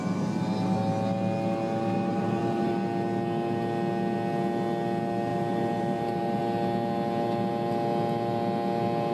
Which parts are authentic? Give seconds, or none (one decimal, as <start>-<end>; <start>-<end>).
0.0-2.1; 2.7-5.3; 6.4-9.1